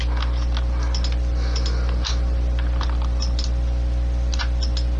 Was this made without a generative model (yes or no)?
yes